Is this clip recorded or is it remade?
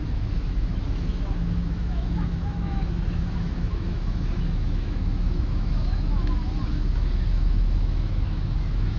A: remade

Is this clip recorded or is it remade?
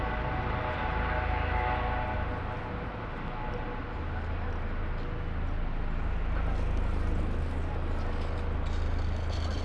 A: recorded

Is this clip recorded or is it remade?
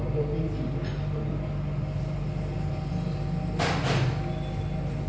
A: recorded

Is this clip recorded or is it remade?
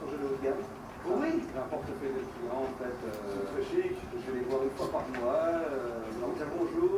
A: recorded